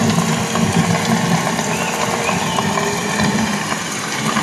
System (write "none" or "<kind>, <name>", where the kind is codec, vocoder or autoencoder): none